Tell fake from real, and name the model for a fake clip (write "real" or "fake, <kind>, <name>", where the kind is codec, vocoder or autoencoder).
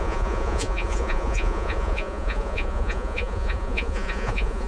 fake, vocoder, Vocos